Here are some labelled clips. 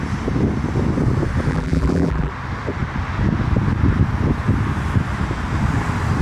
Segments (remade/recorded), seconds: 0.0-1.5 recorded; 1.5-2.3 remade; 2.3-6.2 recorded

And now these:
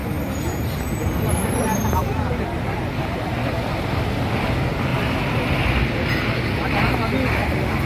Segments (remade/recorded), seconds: 0.0-3.7 remade; 3.7-4.9 recorded; 4.9-6.3 remade; 6.3-7.9 recorded

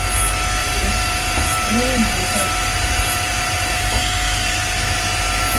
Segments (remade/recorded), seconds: 0.0-0.6 recorded; 0.6-4.0 remade; 4.0-5.6 recorded

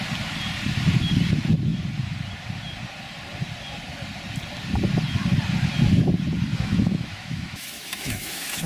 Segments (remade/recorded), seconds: 0.0-6.5 recorded; 6.5-8.7 remade